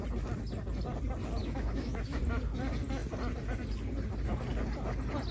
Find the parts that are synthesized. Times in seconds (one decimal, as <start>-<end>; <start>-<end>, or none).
1.4-2.2